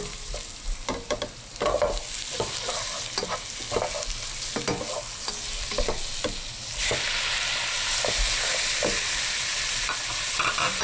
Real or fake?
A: real